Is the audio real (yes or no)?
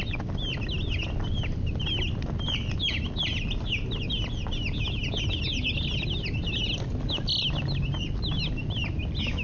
yes